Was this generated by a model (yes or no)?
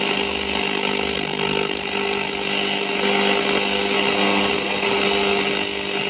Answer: no